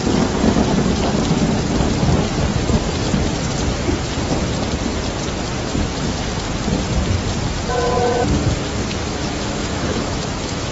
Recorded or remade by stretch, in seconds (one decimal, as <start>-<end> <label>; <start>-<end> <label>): 0.0-9.0 recorded; 9.0-10.7 remade